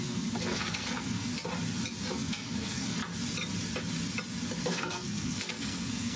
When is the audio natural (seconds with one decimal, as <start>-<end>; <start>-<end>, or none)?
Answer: 1.3-2.1; 3.0-4.6